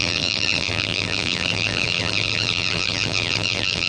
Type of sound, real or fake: fake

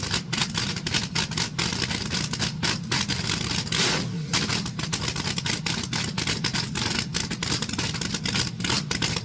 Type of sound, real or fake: real